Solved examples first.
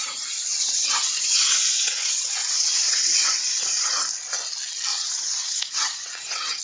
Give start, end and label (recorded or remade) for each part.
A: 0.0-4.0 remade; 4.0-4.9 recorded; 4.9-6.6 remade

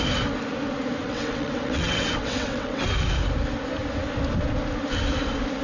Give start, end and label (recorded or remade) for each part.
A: 0.0-1.0 recorded; 1.0-2.8 remade; 2.8-5.6 recorded

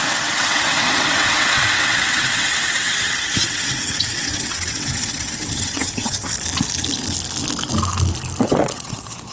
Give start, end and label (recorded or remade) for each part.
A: 0.0-6.3 remade; 6.3-8.4 recorded; 8.4-9.3 remade

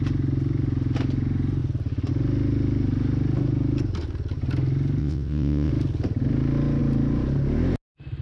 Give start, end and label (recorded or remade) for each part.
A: 0.0-5.0 recorded; 5.0-5.7 remade; 5.7-8.2 recorded

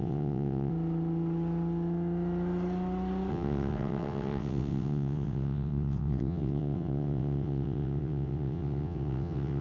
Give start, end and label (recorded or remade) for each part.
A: 0.0-0.7 remade; 0.7-3.3 recorded; 3.3-9.6 remade

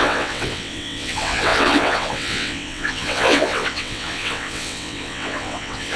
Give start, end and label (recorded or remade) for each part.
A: 0.0-6.0 remade

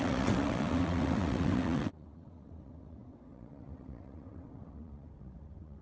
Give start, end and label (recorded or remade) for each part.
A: 0.0-5.8 remade